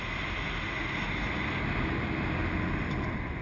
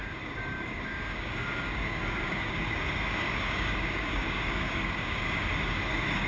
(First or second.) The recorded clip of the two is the first